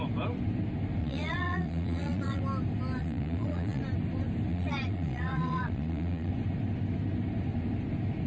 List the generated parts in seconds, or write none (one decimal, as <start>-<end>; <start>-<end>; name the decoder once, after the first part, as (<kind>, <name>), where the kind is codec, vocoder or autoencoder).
1.0-2.4 (vocoder, Vocos); 3.0-3.8; 4.5-6.3